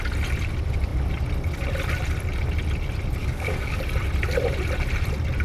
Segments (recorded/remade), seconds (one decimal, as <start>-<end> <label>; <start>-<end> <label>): 0.0-3.2 recorded; 3.2-3.8 remade; 3.8-5.4 recorded